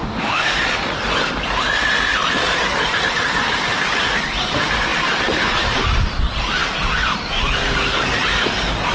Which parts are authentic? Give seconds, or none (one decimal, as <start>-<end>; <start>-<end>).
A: 0.6-8.9